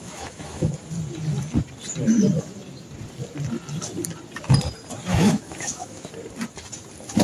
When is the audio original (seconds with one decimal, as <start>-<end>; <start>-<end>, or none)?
0.7-5.1; 6.1-7.2